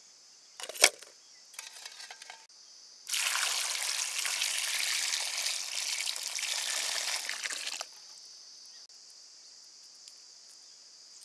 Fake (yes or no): no